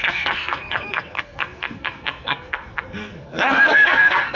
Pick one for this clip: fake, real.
fake